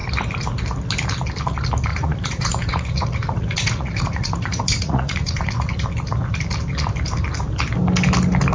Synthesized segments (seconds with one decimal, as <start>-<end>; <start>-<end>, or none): 1.9-5.5